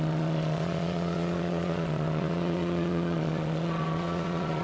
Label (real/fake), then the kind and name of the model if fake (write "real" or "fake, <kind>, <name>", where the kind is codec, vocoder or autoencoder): fake, vocoder, Vocos